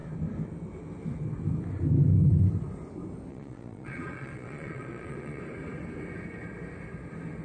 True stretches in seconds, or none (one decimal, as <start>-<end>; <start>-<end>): 0.0-3.3; 5.4-7.4